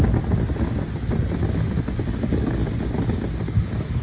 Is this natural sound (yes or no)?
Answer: yes